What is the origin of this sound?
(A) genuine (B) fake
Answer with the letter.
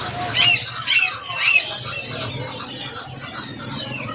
A